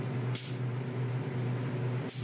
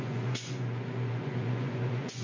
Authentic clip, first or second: first